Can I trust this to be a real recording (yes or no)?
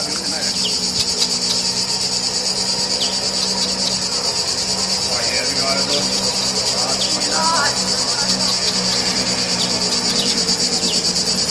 yes